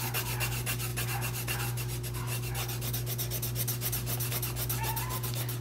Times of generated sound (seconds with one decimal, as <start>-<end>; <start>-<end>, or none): none